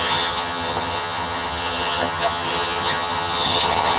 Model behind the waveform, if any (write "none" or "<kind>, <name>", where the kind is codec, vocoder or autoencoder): vocoder, HiFi-GAN